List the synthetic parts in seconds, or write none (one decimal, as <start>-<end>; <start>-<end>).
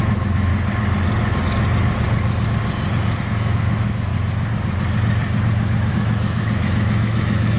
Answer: 0.0-0.5; 3.2-4.1; 5.9-7.6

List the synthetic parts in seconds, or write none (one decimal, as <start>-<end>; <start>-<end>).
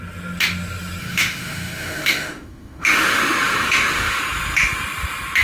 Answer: 1.0-4.2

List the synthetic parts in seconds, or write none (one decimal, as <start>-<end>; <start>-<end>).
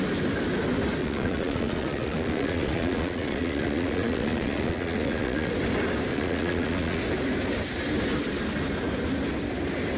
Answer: 1.0-5.5; 6.1-7.0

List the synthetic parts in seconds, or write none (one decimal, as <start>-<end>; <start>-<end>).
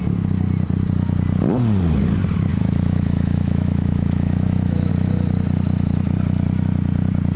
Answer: 2.5-4.9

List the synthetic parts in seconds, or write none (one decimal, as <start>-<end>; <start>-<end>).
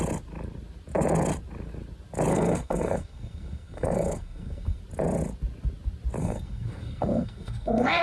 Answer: 2.3-4.8; 6.2-8.0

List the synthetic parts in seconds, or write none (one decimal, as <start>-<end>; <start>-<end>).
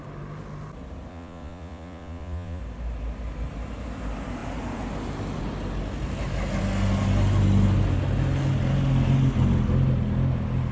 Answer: 1.1-2.6